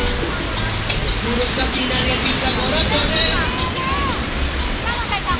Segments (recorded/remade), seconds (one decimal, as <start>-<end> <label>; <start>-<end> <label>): 0.0-5.4 recorded